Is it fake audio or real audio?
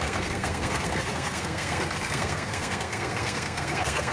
fake